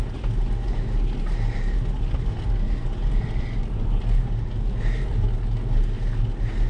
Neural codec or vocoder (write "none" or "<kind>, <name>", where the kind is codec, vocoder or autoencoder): none